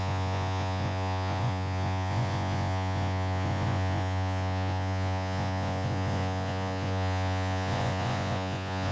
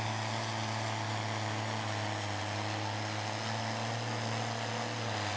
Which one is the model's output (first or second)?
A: first